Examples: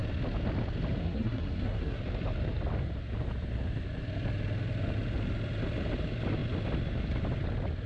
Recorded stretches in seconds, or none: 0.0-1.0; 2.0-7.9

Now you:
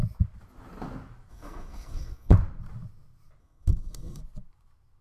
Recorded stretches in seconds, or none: 0.0-1.3; 2.3-3.4; 4.2-5.0

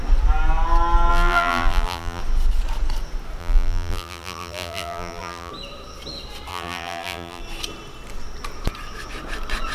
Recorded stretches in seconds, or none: 0.0-1.1; 2.2-3.4; 5.5-6.5; 7.4-9.7

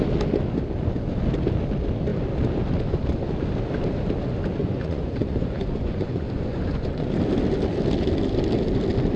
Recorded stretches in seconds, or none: 0.0-4.6; 7.2-9.2

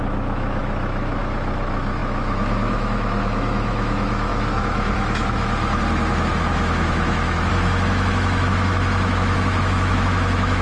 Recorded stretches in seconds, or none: none